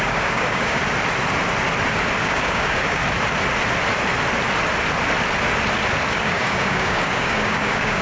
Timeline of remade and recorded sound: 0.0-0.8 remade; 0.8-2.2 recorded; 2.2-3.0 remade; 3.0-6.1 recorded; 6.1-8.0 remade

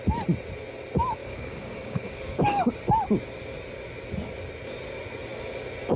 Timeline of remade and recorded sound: 0.0-1.2 recorded; 1.2-2.7 remade; 2.7-6.0 recorded

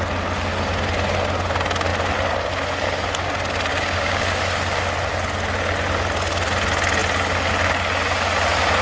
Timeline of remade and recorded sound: 0.0-3.7 recorded; 3.7-4.4 remade; 4.4-8.8 recorded

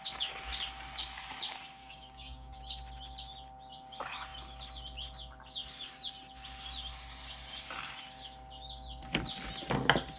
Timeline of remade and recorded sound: 0.0-1.8 recorded; 1.8-2.6 remade; 2.6-10.2 recorded

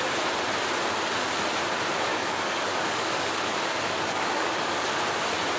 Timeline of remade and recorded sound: 0.0-2.1 recorded; 2.1-5.0 remade; 5.0-5.6 recorded

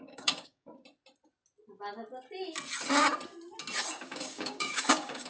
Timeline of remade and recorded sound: 0.0-0.7 remade; 0.7-3.9 recorded; 3.9-5.3 remade